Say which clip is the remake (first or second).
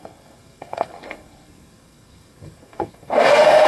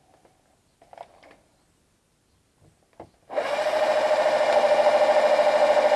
first